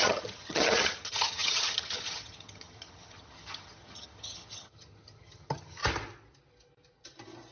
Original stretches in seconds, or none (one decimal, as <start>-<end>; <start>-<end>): 5.8-7.5